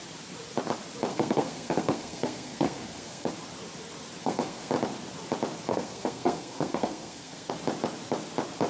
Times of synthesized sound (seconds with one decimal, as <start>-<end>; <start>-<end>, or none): 1.1-3.3; 4.2-4.7; 5.7-7.5